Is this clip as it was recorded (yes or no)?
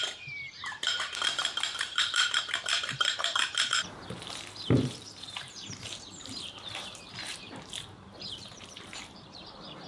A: no